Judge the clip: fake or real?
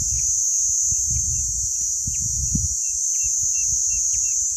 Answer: real